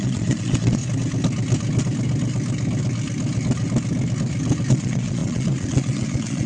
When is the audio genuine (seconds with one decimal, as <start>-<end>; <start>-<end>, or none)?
0.8-4.7